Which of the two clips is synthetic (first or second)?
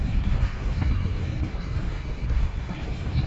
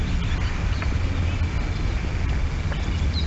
first